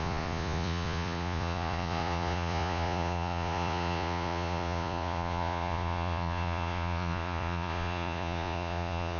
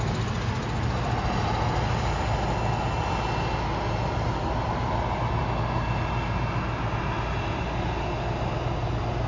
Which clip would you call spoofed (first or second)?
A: first